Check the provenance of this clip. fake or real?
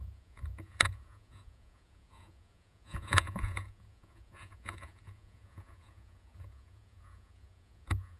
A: fake